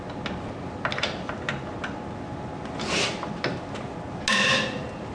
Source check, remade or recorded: recorded